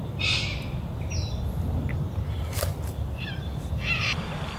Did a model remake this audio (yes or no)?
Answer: no